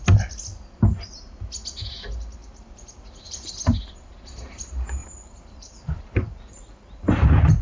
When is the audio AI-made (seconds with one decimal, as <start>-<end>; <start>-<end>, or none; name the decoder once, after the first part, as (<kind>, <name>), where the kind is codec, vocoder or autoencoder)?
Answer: 2.4-3.5 (vocoder, BigVGAN v2); 5.0-7.6